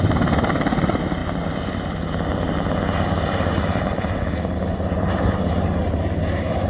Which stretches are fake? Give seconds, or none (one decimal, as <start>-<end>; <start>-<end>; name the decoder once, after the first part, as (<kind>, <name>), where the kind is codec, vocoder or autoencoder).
none

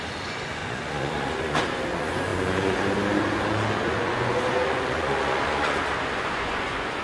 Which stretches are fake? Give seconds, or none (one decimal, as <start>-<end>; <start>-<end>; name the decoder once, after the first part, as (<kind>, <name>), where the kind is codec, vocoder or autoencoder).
0.0-7.0 (vocoder, Vocos)

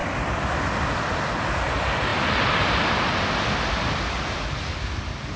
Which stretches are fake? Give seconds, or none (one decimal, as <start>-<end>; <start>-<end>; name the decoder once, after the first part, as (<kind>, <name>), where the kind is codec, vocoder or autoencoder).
none